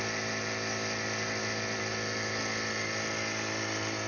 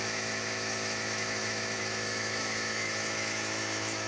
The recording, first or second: first